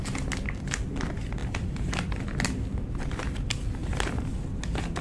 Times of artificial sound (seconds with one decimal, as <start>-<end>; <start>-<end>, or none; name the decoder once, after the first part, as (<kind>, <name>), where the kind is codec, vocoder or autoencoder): 1.4-2.2 (vocoder, BigVGAN v2); 3.8-4.4